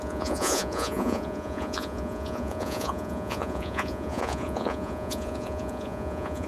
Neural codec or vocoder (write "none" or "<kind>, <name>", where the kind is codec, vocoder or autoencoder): vocoder, Vocos